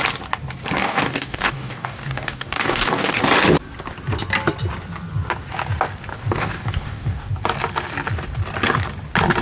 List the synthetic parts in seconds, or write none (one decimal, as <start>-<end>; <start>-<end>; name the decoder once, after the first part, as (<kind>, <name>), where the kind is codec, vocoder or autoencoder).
0.8-3.2 (codec, DAC); 6.1-7.3

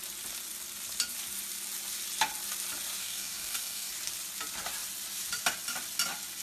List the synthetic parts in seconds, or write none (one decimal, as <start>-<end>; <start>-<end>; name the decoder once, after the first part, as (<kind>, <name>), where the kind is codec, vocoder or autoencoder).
3.0-3.9 (codec, DAC)

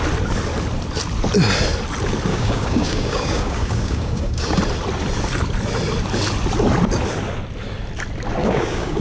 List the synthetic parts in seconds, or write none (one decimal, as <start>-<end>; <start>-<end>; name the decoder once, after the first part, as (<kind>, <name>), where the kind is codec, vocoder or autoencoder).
2.3-4.6 (codec, DAC); 8.4-9.0

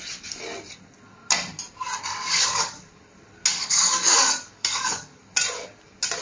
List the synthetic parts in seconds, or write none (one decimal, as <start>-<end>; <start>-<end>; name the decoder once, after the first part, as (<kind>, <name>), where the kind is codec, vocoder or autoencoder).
2.1-2.9 (codec, DAC); 3.5-5.2

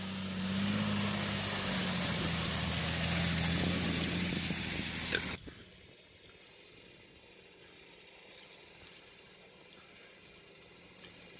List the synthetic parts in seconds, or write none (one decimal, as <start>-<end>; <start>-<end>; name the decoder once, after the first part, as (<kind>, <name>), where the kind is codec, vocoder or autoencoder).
none